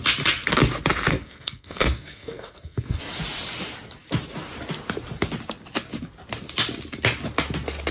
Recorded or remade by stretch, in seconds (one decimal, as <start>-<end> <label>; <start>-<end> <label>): 0.0-1.1 recorded; 1.1-3.0 remade; 3.0-7.9 recorded